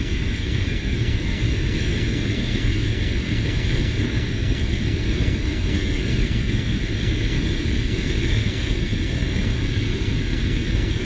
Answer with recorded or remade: remade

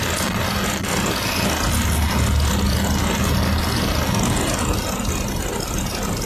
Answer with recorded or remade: recorded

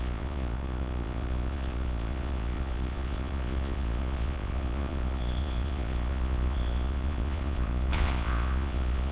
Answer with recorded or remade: remade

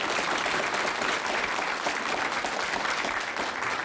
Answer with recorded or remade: recorded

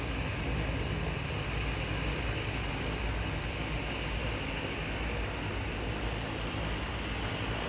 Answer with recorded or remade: recorded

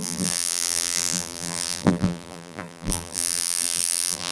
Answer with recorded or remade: remade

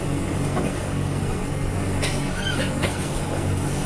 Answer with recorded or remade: remade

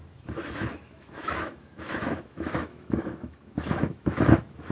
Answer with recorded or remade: remade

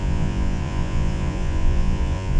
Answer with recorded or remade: remade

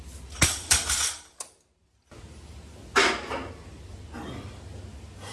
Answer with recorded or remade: recorded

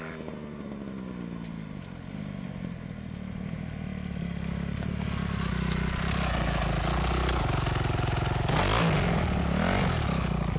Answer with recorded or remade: recorded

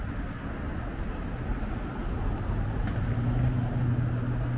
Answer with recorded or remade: recorded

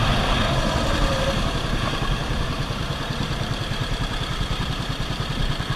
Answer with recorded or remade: remade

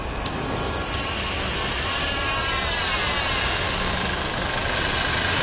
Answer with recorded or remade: recorded